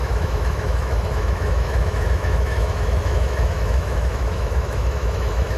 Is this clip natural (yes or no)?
no